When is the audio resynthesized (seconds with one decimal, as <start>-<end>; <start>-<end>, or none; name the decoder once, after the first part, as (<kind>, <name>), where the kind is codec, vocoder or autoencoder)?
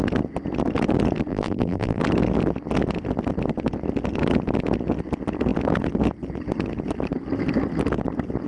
1.3-2.0 (vocoder, BigVGAN v2)